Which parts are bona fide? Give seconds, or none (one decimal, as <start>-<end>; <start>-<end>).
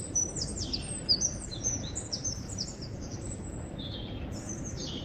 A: 0.0-1.5; 4.5-5.0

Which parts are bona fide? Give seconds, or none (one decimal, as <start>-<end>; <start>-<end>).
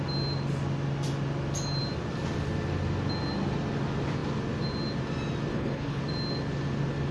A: 0.0-5.5; 6.0-7.1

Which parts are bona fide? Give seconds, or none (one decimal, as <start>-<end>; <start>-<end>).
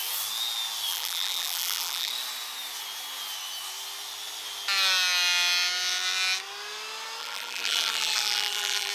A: 0.0-0.9; 2.1-7.2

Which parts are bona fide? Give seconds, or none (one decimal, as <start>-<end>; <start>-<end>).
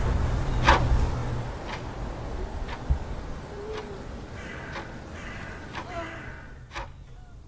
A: 0.0-7.5